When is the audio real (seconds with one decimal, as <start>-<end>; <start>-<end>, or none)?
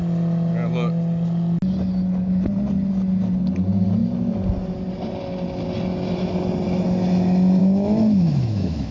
0.0-7.6